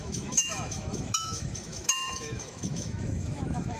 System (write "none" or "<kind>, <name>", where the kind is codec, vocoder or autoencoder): autoencoder, DAC-VAE